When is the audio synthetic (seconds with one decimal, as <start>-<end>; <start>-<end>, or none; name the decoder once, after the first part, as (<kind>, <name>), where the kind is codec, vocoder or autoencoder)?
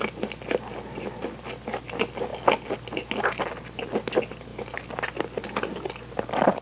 none